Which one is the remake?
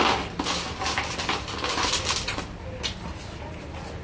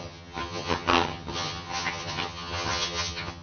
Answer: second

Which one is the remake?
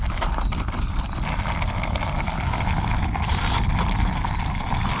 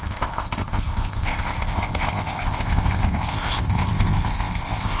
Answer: second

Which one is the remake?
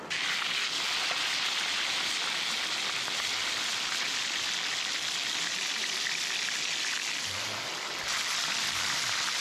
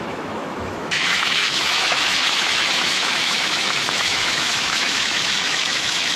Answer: second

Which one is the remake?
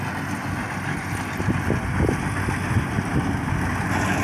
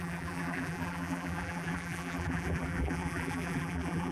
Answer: second